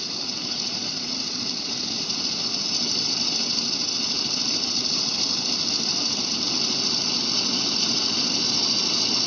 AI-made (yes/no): no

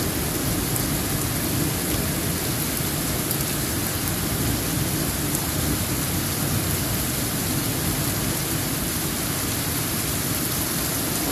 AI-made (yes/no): no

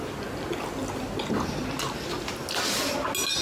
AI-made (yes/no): no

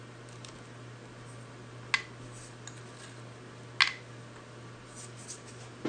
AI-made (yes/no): no